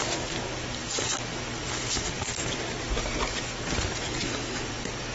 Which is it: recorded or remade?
recorded